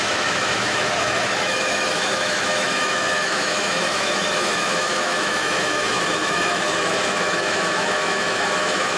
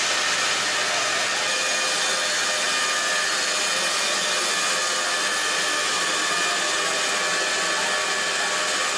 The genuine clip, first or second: second